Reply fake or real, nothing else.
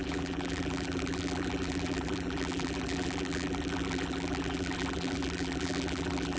fake